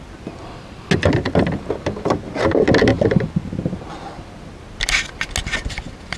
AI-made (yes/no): no